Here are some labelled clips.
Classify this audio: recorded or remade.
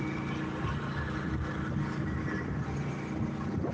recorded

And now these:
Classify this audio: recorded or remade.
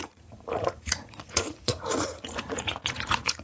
remade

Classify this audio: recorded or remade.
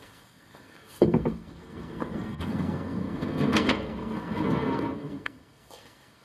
remade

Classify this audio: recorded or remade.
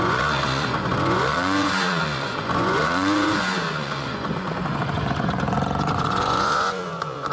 remade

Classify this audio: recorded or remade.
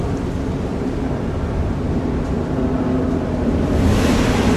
recorded